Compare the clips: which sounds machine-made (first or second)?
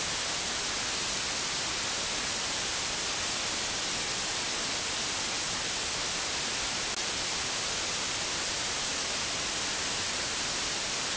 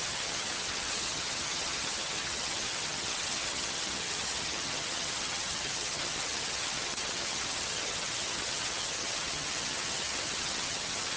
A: second